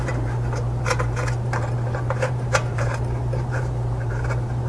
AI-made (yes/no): yes